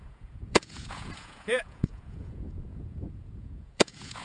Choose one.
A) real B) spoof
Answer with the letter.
B